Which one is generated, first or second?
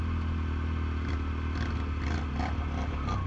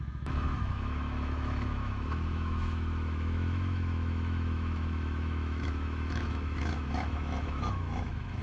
second